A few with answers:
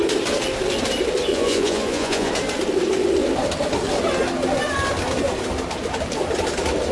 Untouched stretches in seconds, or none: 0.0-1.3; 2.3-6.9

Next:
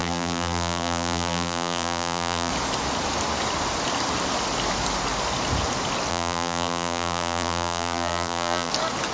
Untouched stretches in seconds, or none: 2.5-6.1; 8.7-9.1

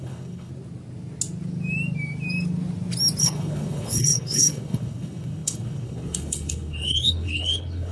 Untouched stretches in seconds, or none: 0.5-3.2

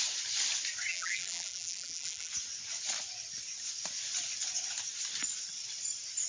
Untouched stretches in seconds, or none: 0.0-0.9; 2.3-6.3